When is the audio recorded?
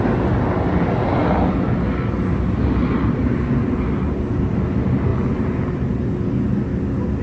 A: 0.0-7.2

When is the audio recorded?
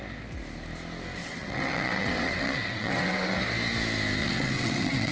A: 0.0-1.2; 3.4-4.2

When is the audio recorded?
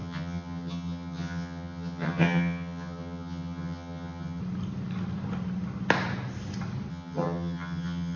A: 4.4-6.9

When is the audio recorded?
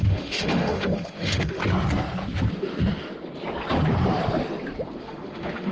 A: 1.6-5.0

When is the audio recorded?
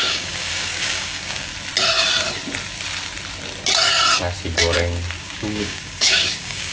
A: 1.5-5.2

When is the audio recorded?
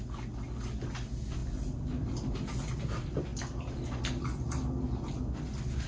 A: 0.0-5.9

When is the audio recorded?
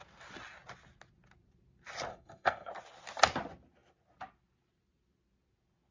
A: 0.0-2.1; 2.7-5.9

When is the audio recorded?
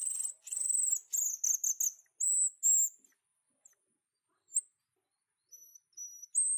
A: 0.0-3.3; 5.5-6.6